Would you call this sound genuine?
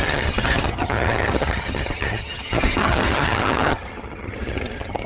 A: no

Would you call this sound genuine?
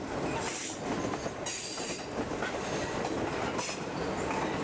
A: yes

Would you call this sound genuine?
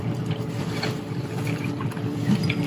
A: no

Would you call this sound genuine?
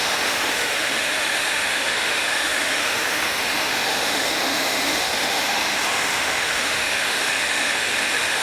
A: no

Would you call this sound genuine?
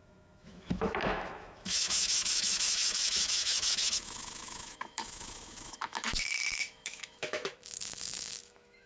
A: no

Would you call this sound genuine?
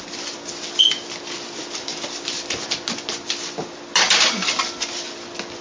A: yes